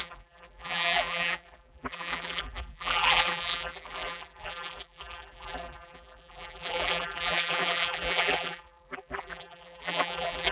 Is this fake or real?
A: fake